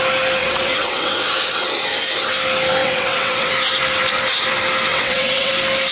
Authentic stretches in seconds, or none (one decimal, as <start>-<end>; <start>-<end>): 0.0-0.4; 1.2-2.8; 3.5-4.9; 5.5-5.9

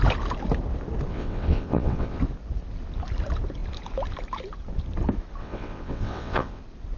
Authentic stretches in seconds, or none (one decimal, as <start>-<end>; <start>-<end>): 0.0-1.1; 2.2-5.4; 6.6-7.0

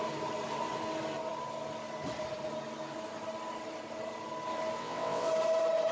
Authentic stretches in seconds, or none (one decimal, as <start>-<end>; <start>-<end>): 0.0-4.8; 5.3-5.9

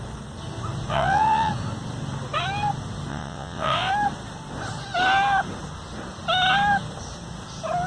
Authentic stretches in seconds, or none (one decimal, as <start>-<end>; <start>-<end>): 0.0-0.9; 1.5-3.1; 3.9-7.9